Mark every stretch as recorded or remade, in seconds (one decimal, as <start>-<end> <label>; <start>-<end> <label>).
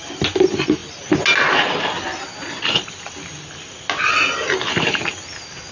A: 0.0-5.7 recorded